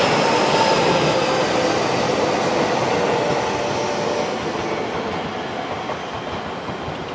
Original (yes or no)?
yes